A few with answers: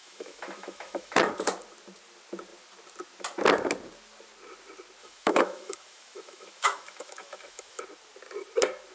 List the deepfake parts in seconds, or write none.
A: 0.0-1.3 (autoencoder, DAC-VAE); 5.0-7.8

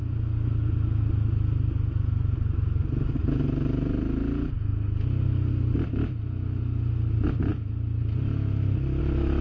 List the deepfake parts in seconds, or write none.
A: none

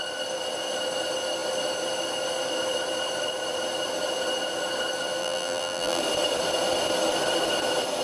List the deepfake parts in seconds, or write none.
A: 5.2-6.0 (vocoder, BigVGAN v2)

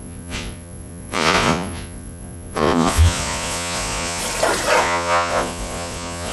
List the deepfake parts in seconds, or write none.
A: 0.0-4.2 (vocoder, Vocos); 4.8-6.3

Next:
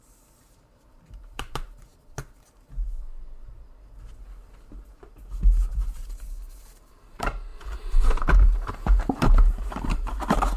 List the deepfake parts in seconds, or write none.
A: 0.0-1.9 (vocoder, BigVGAN v2); 5.7-10.6

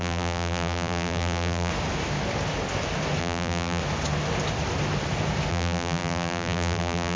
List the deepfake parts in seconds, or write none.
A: 0.0-1.7 (vocoder, BigVGAN v2); 3.2-3.8; 5.5-7.2